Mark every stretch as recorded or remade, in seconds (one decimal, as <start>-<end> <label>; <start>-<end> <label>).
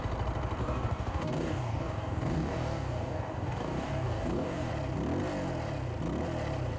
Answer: 0.0-0.6 recorded; 0.6-4.7 remade; 4.7-6.8 recorded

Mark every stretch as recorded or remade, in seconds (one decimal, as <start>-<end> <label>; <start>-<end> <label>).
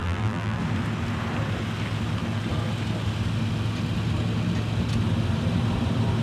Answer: 0.0-0.6 remade; 0.6-6.2 recorded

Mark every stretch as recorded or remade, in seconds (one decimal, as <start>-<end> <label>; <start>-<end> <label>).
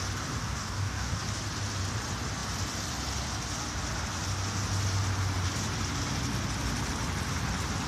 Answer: 0.0-0.4 recorded; 0.4-1.2 remade; 1.2-7.9 recorded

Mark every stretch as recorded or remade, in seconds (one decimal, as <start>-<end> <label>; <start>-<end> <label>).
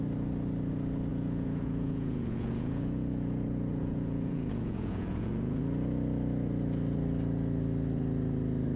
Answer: 0.0-1.1 recorded; 1.1-5.6 remade; 5.6-8.8 recorded